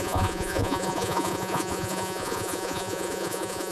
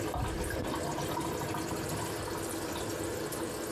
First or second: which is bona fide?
second